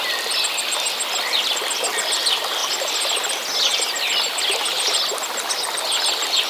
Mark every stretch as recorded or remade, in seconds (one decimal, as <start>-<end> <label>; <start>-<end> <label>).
0.0-6.5 recorded

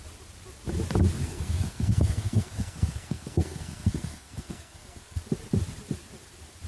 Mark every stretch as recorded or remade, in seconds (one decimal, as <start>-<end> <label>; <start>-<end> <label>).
0.0-1.2 recorded; 1.2-5.2 remade; 5.2-6.7 recorded

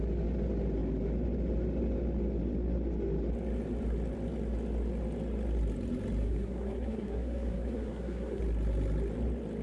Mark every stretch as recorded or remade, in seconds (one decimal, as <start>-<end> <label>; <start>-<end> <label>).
0.0-6.2 recorded; 6.2-8.4 remade; 8.4-9.6 recorded

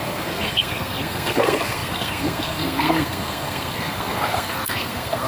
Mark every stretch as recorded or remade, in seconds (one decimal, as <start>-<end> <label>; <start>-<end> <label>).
0.0-5.3 remade

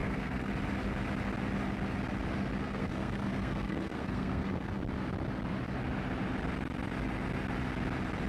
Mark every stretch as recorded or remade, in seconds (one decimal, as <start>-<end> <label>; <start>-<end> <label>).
0.0-0.5 remade; 0.5-2.6 recorded; 2.6-4.8 remade; 4.8-8.3 recorded